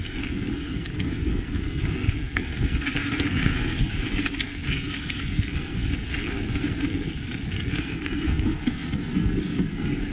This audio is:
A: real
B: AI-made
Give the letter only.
B